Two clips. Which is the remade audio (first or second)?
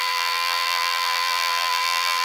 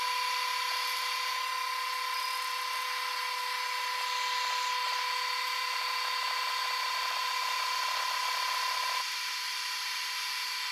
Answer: first